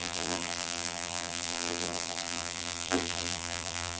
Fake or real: fake